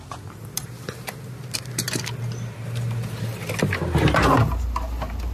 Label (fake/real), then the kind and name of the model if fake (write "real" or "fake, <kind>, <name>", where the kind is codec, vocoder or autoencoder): real